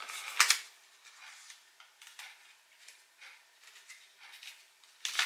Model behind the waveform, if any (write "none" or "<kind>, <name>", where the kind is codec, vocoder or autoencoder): none